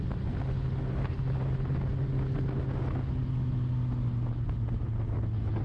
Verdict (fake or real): real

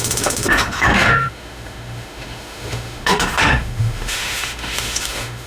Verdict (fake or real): fake